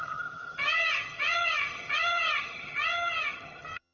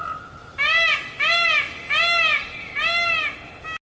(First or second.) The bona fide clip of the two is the second